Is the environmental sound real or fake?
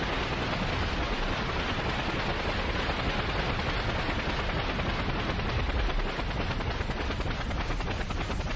real